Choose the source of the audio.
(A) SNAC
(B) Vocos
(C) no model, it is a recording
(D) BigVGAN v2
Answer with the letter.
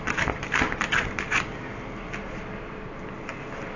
C